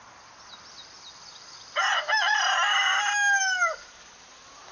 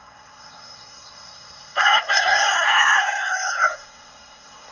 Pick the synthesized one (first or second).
second